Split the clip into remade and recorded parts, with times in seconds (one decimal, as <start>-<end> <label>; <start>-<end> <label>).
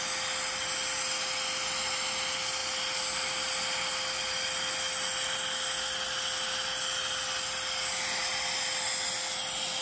0.0-9.8 recorded